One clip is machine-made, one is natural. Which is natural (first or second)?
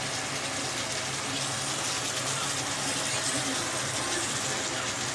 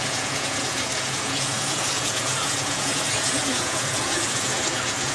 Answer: first